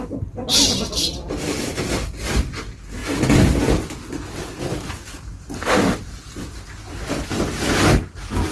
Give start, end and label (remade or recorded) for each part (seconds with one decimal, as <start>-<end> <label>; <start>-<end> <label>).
0.0-4.7 recorded; 4.7-5.4 remade; 5.4-8.5 recorded